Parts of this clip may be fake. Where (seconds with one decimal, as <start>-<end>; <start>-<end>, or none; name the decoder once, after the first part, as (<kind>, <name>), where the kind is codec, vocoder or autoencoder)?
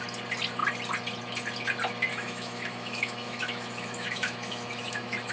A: 2.1-5.3 (autoencoder, DAC-VAE)